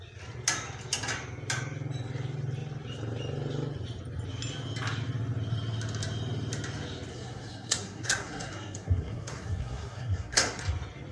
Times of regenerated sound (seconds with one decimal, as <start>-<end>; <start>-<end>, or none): 7.1-10.6